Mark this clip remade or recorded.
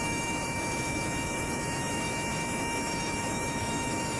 remade